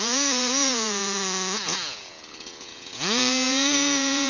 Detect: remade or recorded remade